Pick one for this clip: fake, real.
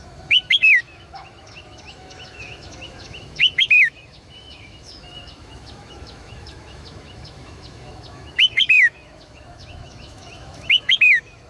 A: fake